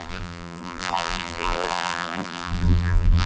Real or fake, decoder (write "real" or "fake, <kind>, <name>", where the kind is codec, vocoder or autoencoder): fake, vocoder, BigVGAN v2